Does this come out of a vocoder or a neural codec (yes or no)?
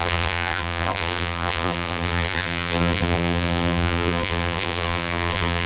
yes